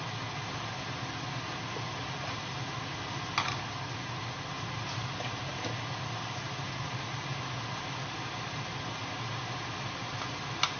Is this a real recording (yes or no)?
yes